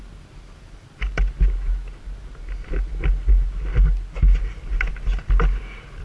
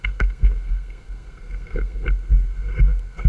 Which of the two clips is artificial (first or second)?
second